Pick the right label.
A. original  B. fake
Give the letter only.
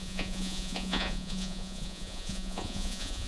B